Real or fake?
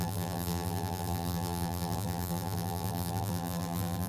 fake